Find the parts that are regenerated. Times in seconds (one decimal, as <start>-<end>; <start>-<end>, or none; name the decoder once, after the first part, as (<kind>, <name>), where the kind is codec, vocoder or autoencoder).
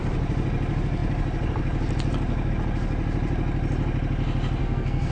4.6-5.1 (codec, SNAC)